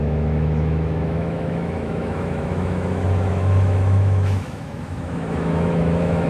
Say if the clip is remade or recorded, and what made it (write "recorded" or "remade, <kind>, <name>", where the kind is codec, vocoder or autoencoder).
remade, autoencoder, DAC-VAE